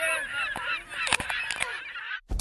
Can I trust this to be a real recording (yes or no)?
yes